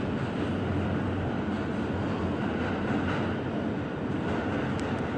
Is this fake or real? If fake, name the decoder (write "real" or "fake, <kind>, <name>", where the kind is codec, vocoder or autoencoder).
real